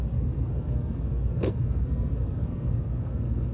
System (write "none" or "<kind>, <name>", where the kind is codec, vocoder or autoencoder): codec, SNAC